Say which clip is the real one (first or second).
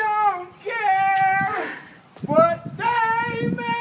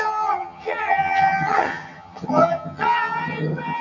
first